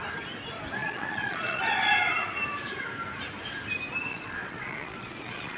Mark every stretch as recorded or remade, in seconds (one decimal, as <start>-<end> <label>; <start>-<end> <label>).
0.0-0.8 recorded; 0.8-1.6 remade; 1.6-4.1 recorded; 4.1-5.6 remade